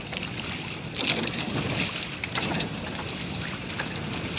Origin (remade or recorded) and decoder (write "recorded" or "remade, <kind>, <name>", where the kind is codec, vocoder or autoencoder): recorded